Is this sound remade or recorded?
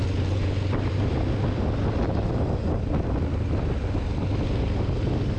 recorded